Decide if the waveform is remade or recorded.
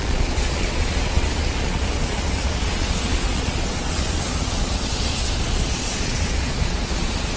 remade